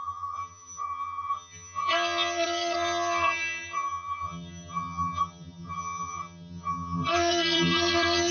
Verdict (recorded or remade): remade